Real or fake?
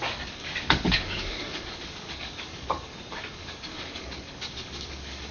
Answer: fake